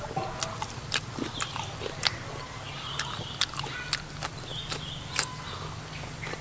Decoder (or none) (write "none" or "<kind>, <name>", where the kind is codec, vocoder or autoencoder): none